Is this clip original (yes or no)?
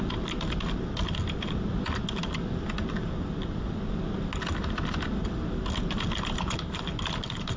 yes